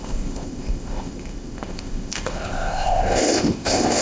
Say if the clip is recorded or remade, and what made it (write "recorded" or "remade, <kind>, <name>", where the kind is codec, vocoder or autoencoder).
remade, codec, ZipCodec